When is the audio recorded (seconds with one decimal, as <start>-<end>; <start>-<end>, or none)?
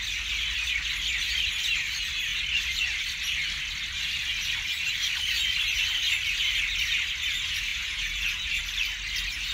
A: 0.0-7.7; 8.6-9.5